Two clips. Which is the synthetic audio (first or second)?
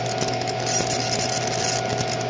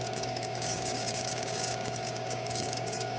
second